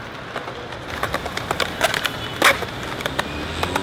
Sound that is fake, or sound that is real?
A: real